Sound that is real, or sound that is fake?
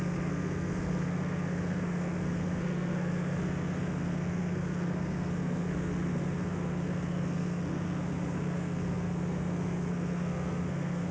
fake